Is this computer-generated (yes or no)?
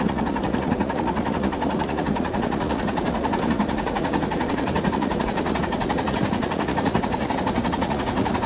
yes